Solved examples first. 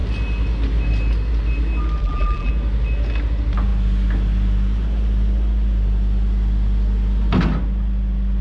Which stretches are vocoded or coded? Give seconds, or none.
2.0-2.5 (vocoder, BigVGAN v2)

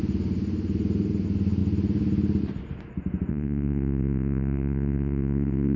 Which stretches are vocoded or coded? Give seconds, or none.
3.3-5.8 (vocoder, WaveNeXt)